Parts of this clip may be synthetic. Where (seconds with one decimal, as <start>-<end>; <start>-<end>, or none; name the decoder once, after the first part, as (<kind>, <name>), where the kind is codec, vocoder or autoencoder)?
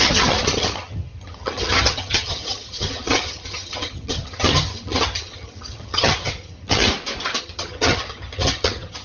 0.0-6.9 (vocoder, HiFi-GAN); 7.4-9.0